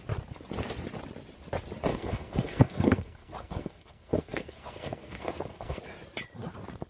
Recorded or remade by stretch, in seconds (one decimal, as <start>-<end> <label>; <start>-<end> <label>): 0.0-1.9 recorded; 1.9-5.8 remade; 5.8-6.9 recorded